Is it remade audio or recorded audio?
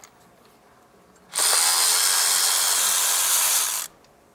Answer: recorded